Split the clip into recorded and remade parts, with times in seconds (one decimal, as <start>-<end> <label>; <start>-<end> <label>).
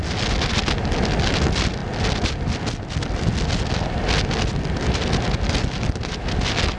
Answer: 0.0-6.8 recorded